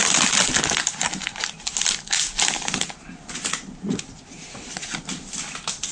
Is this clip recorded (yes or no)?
yes